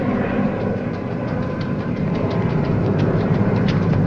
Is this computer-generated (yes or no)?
yes